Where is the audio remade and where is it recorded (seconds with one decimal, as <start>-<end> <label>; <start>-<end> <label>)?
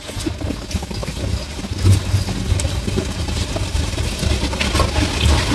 0.0-5.5 recorded